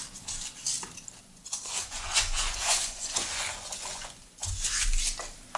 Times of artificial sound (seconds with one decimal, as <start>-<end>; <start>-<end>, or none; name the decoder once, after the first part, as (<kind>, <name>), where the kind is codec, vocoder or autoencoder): 1.2-4.6 (vocoder, Vocos)